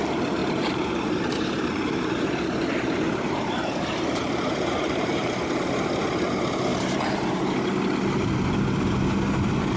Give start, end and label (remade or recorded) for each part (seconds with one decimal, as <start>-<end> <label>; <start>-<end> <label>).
0.0-0.4 recorded; 0.4-5.3 remade; 5.3-6.7 recorded; 6.7-7.4 remade; 7.4-9.8 recorded